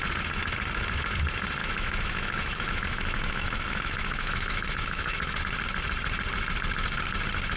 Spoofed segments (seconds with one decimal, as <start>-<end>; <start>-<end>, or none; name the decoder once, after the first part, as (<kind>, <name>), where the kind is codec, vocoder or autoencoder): 1.6-5.4 (autoencoder, DAC-VAE)